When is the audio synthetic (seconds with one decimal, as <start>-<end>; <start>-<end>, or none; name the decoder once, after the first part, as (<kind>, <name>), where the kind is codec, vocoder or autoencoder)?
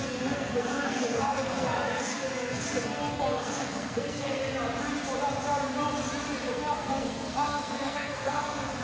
0.0-4.4 (codec, SNAC); 6.5-8.8